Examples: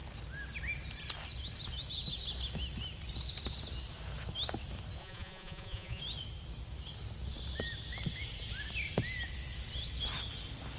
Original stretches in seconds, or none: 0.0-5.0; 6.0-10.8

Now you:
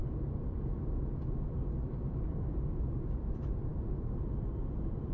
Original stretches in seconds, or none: 0.0-0.6